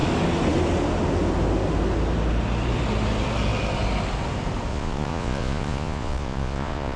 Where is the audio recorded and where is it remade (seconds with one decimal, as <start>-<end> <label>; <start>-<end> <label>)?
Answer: 0.0-4.7 recorded; 4.7-7.0 remade